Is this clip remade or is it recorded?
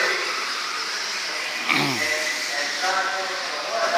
recorded